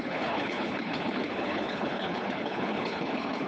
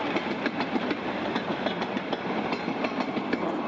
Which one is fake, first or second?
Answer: first